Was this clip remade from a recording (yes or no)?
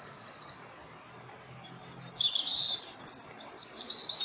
no